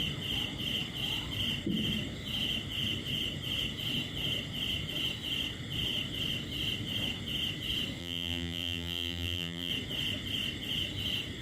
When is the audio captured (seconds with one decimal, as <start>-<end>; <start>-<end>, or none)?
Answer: 0.0-8.0; 9.7-11.4